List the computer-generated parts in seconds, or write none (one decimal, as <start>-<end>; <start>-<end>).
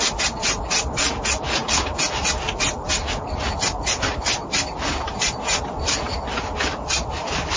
0.4-1.0; 6.7-7.6